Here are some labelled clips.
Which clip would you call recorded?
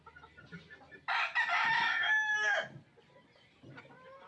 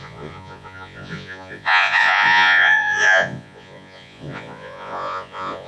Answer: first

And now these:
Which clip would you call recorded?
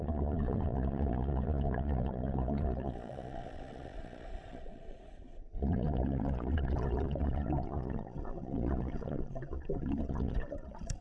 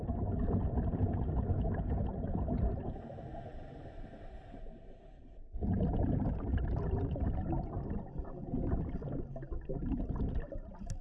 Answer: second